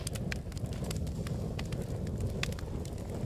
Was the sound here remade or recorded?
recorded